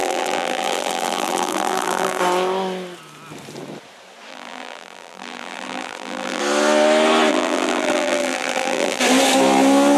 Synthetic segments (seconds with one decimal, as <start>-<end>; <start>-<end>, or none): 0.0-2.2; 4.3-6.4; 7.3-9.0